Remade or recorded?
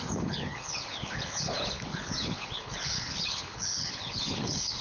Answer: remade